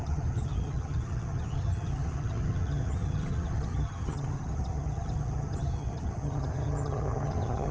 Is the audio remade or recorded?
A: remade